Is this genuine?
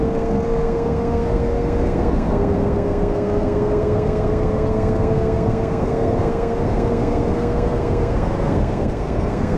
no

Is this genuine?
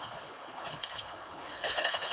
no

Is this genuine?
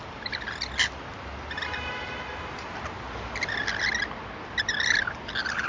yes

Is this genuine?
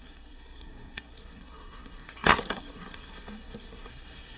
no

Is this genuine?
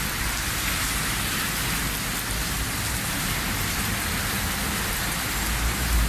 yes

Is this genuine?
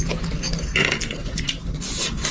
yes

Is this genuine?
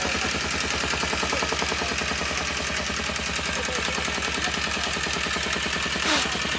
yes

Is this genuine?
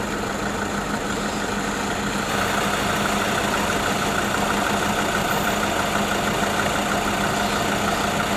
yes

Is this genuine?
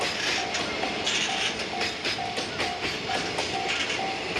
yes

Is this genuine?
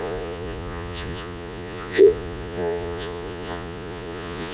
no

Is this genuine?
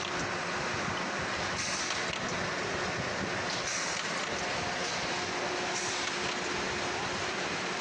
yes